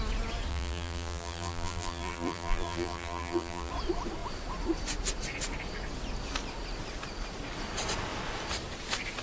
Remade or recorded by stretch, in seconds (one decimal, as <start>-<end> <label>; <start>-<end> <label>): 0.0-0.5 recorded; 0.5-3.7 remade; 3.7-9.2 recorded